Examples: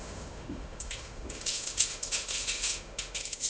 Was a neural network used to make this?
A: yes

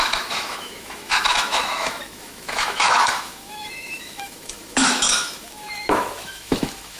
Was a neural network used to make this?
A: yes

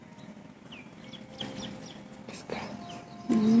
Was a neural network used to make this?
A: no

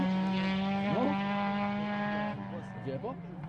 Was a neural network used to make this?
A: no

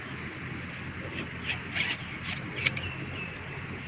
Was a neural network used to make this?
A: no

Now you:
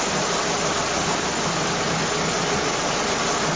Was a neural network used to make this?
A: no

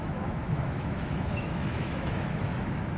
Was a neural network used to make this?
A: yes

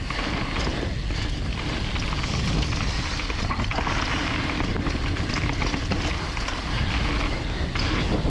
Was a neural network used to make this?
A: no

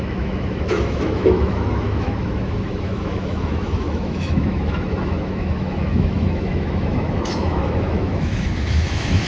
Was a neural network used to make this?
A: yes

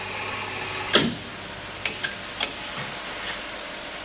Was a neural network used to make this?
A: no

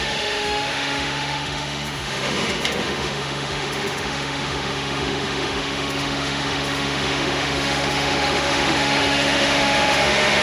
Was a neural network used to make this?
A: yes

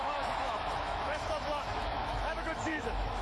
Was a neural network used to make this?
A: yes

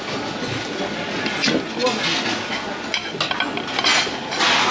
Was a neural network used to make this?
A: no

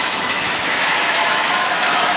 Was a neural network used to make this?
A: yes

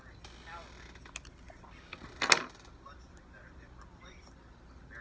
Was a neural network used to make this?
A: no